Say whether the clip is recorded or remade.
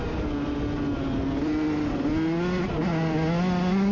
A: recorded